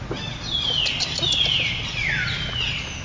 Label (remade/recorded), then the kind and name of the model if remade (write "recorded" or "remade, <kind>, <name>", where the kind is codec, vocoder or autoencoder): recorded